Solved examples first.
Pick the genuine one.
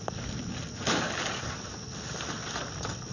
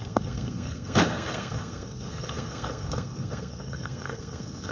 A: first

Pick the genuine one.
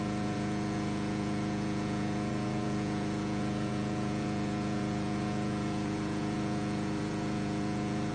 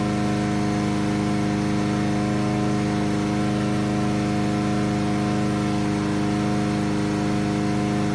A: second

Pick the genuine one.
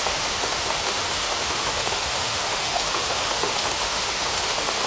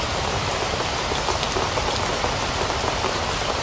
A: second